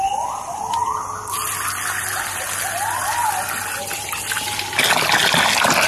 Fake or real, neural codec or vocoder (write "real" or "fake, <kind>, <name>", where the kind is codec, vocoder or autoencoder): real